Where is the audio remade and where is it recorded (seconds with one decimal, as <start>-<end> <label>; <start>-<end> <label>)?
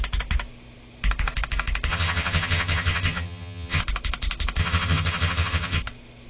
0.0-1.9 recorded; 1.9-3.8 remade; 3.8-4.6 recorded; 4.6-5.8 remade; 5.8-6.3 recorded